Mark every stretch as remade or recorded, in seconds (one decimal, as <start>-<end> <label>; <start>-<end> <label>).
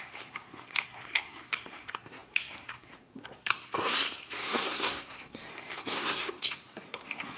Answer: 0.0-7.4 remade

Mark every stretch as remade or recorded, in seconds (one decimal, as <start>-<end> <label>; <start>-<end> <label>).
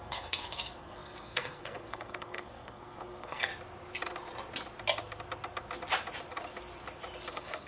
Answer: 0.0-3.5 remade; 3.5-7.3 recorded; 7.3-7.7 remade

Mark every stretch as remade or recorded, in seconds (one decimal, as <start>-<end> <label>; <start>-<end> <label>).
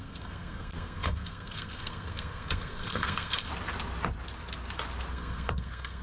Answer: 0.0-3.5 remade; 3.5-5.1 recorded; 5.1-6.0 remade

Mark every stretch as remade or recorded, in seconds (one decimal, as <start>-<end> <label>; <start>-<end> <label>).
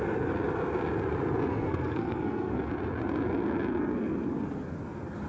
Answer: 0.0-1.5 recorded; 1.5-2.7 remade; 2.7-5.3 recorded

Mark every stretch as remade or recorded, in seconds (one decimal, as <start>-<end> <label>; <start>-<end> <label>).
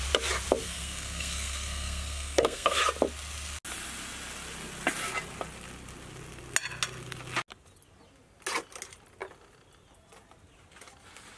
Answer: 0.0-0.6 recorded; 0.6-2.8 remade; 2.8-11.4 recorded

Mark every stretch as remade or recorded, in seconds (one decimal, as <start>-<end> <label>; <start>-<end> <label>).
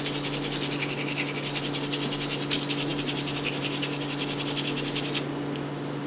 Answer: 0.0-6.1 recorded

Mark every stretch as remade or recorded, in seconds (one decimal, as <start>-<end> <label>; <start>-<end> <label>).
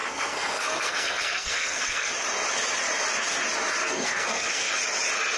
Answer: 0.0-2.1 remade; 2.1-3.8 recorded; 3.8-4.7 remade; 4.7-5.4 recorded